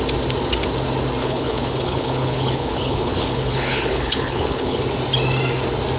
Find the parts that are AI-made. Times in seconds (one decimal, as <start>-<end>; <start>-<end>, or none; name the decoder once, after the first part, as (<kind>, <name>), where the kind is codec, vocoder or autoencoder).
1.2-4.8 (codec, HILCodec)